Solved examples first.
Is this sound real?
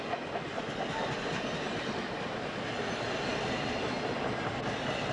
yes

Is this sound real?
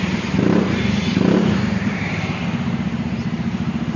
no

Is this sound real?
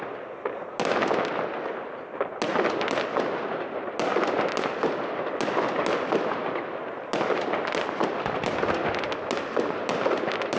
yes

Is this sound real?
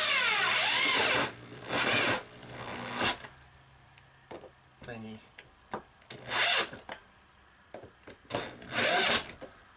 yes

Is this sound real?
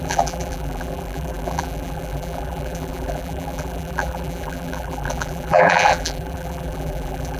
no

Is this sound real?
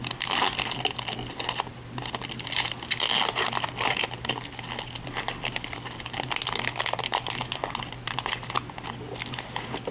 yes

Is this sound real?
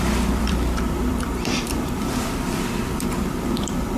no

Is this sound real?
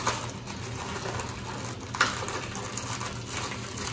yes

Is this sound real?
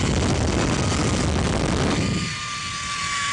yes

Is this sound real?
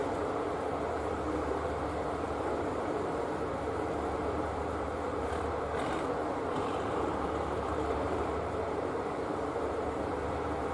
no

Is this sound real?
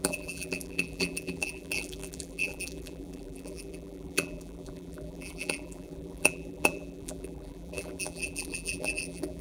no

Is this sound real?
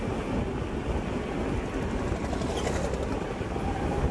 yes